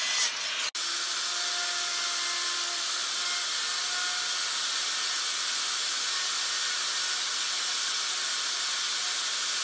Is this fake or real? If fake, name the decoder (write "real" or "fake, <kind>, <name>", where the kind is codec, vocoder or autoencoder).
real